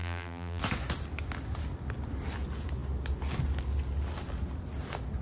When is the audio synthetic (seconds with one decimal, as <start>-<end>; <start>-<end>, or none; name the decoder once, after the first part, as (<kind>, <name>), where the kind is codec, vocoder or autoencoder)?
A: 0.0-0.6 (vocoder, BigVGAN v2)